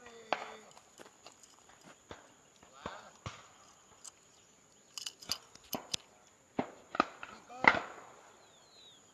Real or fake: real